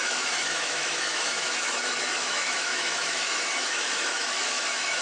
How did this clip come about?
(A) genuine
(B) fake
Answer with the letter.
B